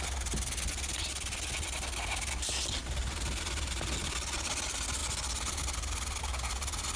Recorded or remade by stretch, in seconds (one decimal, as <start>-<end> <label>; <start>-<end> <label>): 0.0-7.0 recorded